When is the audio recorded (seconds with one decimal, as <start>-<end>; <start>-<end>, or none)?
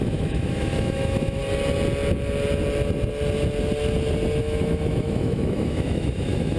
1.4-4.4